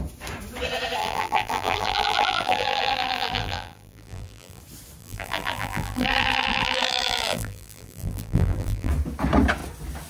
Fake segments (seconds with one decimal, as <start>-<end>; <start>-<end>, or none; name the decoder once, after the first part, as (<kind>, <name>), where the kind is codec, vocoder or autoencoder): 1.0-4.6 (vocoder, BigVGAN v2); 5.0-8.9